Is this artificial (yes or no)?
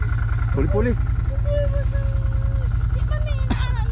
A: no